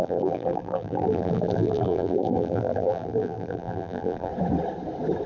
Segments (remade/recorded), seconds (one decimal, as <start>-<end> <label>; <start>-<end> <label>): 0.0-4.3 remade; 4.3-5.3 recorded